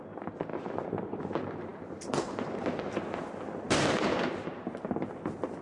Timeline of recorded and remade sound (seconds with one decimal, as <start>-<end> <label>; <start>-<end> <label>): 0.0-5.6 recorded